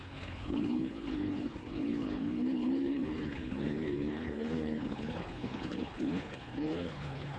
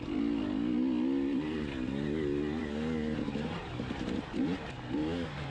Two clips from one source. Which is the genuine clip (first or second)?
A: second